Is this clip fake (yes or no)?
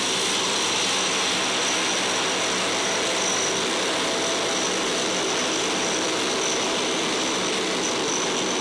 no